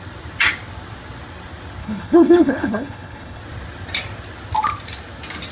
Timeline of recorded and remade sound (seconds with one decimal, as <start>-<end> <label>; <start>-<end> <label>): 0.0-1.8 recorded; 1.8-3.4 remade; 3.4-5.5 recorded

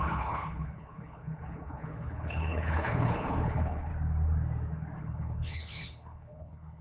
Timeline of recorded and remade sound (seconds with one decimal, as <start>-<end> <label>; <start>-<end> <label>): 0.0-3.9 remade; 3.9-5.0 recorded; 5.0-6.8 remade

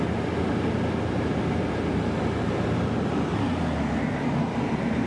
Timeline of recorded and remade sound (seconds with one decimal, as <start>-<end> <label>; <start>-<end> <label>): 0.0-5.1 recorded

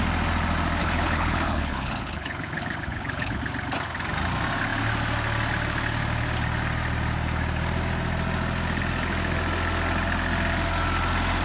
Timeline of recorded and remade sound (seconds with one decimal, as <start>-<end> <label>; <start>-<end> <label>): 0.0-0.8 recorded; 0.8-3.4 remade; 3.4-11.4 recorded

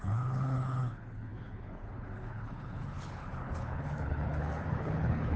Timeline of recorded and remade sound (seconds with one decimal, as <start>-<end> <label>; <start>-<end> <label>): 0.0-5.4 remade